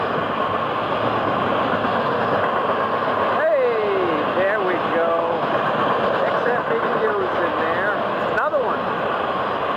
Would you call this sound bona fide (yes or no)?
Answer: yes